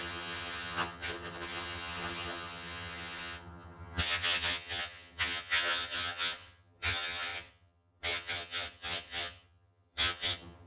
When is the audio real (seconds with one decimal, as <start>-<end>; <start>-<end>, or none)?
none